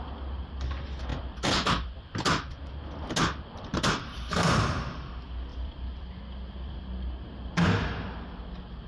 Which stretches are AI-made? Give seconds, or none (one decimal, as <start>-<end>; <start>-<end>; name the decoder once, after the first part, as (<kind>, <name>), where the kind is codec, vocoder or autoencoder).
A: 1.1-2.0 (vocoder, BigVGAN v2); 3.7-4.5; 5.5-6.8